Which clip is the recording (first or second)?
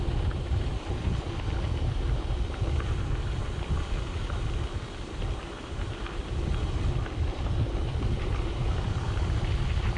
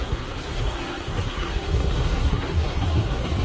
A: first